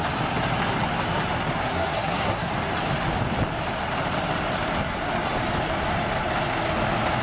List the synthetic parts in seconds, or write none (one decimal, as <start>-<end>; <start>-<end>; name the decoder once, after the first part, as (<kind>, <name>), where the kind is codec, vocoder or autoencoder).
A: 1.6-2.5 (codec, SNAC)